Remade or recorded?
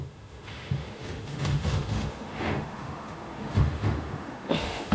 remade